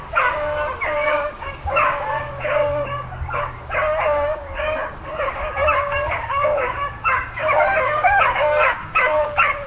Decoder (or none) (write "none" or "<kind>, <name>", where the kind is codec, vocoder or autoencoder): codec, DAC